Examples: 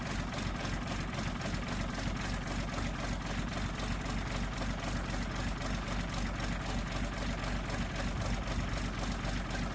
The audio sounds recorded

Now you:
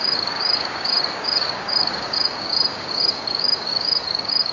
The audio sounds remade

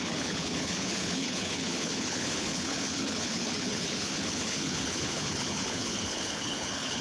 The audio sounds remade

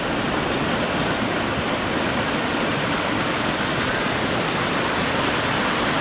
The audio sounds recorded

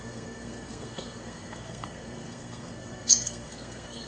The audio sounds remade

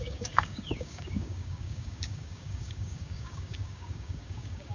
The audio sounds remade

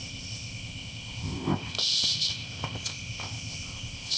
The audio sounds remade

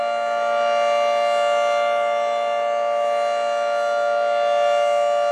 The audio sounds recorded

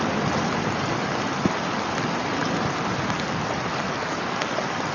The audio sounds recorded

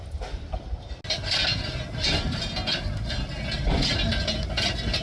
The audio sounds recorded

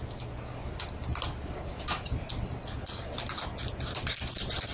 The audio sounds recorded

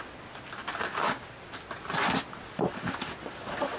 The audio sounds recorded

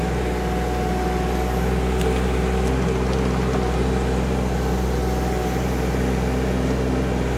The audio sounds recorded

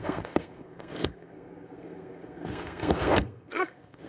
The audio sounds remade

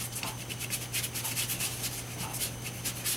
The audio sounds recorded